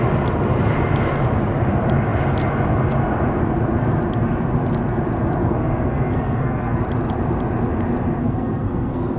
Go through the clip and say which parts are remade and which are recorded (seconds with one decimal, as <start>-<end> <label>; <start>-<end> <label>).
0.0-5.4 recorded; 5.4-6.8 remade; 6.8-8.2 recorded; 8.2-9.2 remade

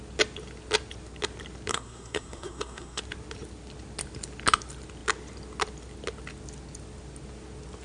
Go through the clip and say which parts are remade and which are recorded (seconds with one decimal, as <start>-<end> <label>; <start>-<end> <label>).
0.0-1.7 recorded; 1.7-3.0 remade; 3.0-7.8 recorded

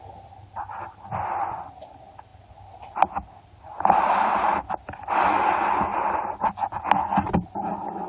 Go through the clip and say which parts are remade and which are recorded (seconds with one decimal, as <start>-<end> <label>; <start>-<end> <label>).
0.0-8.1 recorded

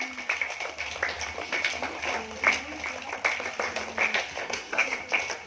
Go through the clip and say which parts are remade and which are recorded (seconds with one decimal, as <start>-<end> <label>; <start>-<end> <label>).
0.0-4.4 recorded; 4.4-5.0 remade; 5.0-5.5 recorded

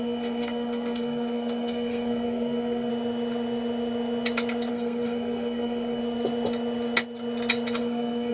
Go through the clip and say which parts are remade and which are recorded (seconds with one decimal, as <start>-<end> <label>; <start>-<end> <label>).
0.0-2.9 remade; 2.9-4.7 recorded; 4.7-6.0 remade; 6.0-7.8 recorded; 7.8-8.3 remade

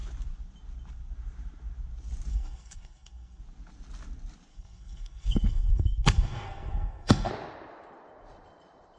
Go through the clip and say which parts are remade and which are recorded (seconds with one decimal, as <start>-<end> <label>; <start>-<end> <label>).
0.0-2.3 recorded; 2.3-3.4 remade; 3.4-4.5 recorded; 4.5-7.3 remade; 7.3-9.0 recorded